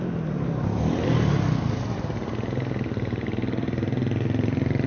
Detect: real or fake real